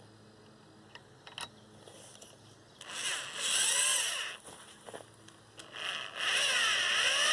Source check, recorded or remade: recorded